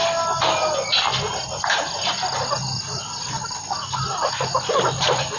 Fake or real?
real